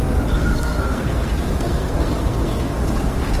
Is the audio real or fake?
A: fake